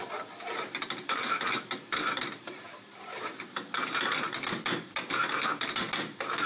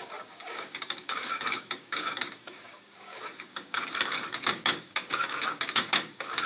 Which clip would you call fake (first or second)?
second